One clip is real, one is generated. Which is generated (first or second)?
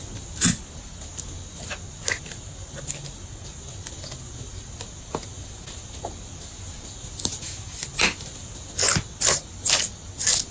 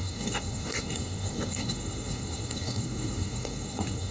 second